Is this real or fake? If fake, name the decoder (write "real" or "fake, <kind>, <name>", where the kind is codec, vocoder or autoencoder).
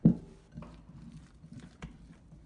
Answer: fake, vocoder, BigVGAN v2